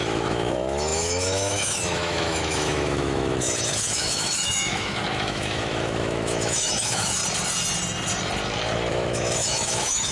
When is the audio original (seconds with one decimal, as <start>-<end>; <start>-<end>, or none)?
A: 7.2-8.9